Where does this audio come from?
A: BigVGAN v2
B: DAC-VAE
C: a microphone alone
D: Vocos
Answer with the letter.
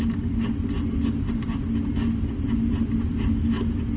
C